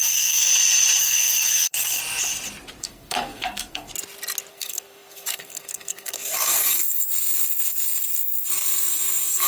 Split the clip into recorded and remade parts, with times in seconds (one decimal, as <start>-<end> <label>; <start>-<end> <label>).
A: 0.0-0.5 remade; 0.5-1.0 recorded; 1.0-2.0 remade; 2.0-2.8 recorded; 2.8-3.9 remade; 3.9-4.5 recorded; 4.5-9.5 remade

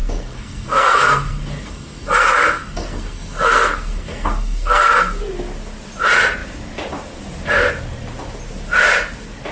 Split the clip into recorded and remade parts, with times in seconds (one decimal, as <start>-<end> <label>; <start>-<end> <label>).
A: 0.0-5.2 remade; 5.2-9.5 recorded

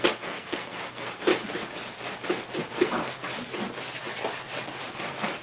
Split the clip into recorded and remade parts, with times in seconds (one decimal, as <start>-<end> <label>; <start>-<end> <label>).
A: 0.0-1.3 remade; 1.3-2.6 recorded; 2.6-3.3 remade; 3.3-4.9 recorded; 4.9-5.4 remade

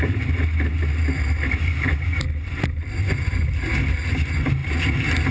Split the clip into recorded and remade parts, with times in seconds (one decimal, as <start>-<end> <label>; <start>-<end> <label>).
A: 0.0-5.3 recorded

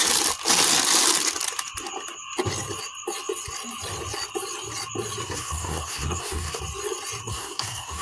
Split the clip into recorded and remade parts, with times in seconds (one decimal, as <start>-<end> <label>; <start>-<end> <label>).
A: 0.0-5.2 recorded; 5.2-6.6 remade; 6.6-7.2 recorded; 7.2-8.0 remade

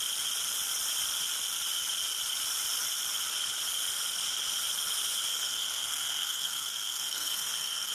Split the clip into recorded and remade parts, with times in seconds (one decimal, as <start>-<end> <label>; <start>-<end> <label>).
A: 0.0-5.3 recorded; 5.3-7.9 remade

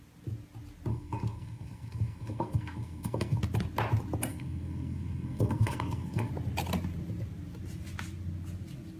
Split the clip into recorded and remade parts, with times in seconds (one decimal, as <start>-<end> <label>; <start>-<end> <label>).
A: 0.0-0.9 recorded; 0.9-3.4 remade; 3.4-4.3 recorded; 4.3-6.3 remade; 6.3-9.0 recorded

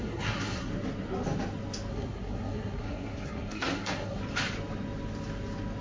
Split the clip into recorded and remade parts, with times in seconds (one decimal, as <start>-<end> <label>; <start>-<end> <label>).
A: 0.0-0.7 remade; 0.7-1.9 recorded; 1.9-4.2 remade; 4.2-5.8 recorded